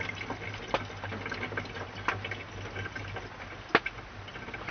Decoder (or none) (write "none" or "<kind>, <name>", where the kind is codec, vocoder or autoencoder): none